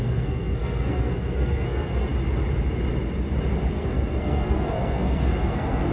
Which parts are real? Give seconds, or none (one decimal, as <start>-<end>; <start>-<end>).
2.1-3.7